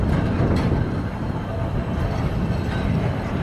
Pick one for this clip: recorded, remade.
recorded